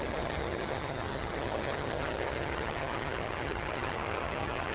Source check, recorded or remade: remade